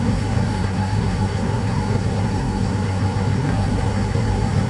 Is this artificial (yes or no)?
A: yes